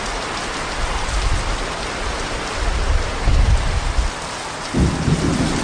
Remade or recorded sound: recorded